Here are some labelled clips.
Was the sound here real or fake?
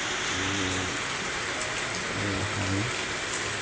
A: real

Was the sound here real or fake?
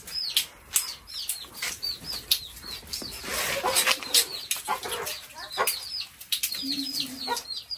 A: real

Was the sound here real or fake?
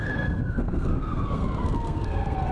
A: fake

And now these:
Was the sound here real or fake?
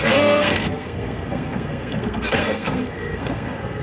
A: fake